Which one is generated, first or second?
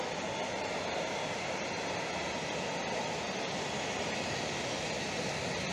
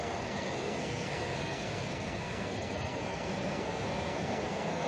second